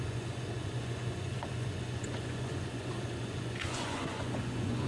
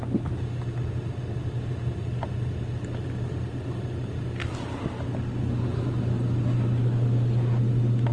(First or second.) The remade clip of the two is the first